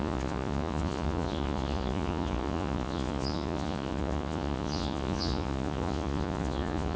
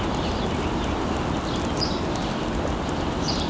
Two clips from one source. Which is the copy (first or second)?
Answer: first